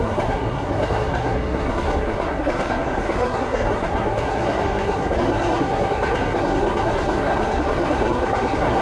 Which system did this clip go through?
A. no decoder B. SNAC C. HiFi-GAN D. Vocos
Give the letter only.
B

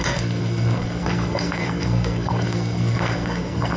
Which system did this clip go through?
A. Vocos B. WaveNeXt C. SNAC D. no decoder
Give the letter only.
C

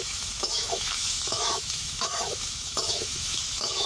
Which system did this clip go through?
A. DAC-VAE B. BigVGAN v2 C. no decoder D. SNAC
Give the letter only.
A